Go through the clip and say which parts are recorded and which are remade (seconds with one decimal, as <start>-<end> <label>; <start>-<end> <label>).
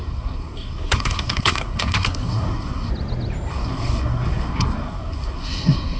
0.0-2.9 remade; 2.9-3.5 recorded; 3.5-6.0 remade